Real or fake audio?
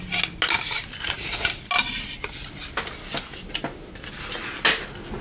real